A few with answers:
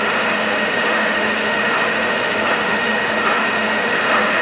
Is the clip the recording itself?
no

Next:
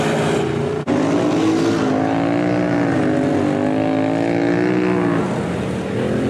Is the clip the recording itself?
yes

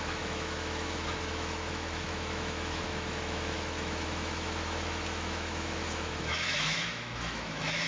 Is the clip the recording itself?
no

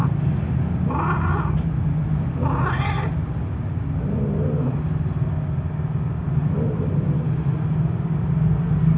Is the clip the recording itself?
yes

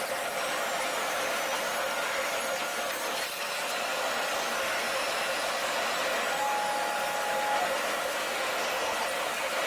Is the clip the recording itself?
yes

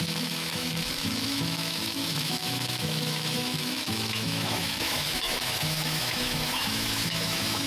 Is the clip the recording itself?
no